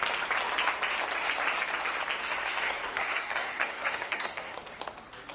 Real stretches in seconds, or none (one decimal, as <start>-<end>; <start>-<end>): 0.0-2.2; 4.6-5.3